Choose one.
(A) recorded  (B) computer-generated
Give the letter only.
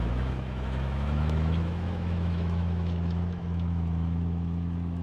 B